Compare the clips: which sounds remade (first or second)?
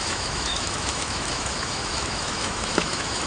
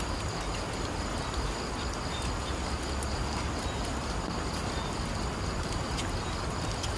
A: first